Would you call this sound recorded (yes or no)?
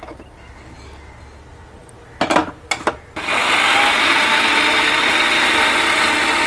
yes